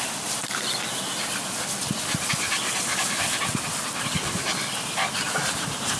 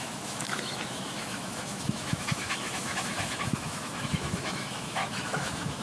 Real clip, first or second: first